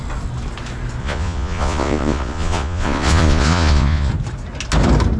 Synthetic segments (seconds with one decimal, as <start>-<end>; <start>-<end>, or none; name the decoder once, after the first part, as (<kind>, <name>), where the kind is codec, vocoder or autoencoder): 1.0-4.1 (vocoder, Vocos)

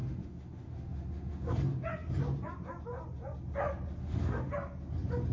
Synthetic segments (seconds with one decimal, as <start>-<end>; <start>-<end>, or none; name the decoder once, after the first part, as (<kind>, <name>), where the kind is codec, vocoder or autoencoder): 0.0-1.5 (autoencoder, DAC-VAE); 4.0-4.5

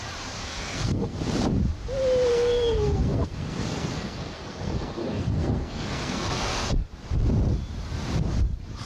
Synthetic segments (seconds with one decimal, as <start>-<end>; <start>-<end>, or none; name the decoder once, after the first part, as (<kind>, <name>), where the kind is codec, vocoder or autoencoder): 0.4-1.2 (codec, SNAC); 2.3-6.9

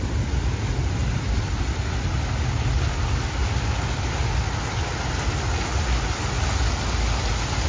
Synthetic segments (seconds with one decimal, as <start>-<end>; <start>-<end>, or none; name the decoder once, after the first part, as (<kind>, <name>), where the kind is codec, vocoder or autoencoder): none

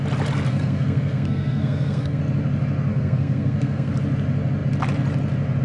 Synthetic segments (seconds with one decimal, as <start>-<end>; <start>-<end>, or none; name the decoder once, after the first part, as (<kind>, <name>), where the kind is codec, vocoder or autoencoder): 0.5-2.2 (codec, SNAC); 2.9-3.9

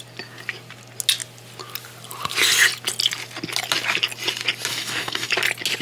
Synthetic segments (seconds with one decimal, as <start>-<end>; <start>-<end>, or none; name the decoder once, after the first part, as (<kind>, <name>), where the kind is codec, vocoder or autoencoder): 4.7-5.3 (codec, DAC)